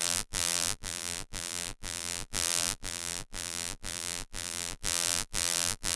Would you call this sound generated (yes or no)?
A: yes